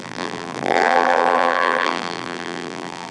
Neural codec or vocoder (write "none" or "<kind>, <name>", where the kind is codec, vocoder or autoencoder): vocoder, BigVGAN v2